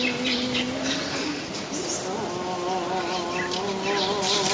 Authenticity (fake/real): real